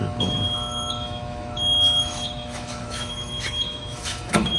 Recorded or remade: remade